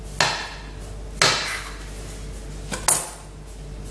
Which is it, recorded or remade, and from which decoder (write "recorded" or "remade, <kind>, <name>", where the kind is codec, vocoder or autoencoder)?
recorded